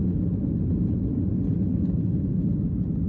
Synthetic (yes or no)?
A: no